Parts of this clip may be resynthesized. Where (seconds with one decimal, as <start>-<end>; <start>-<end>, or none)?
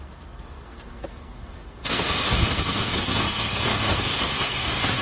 0.0-5.0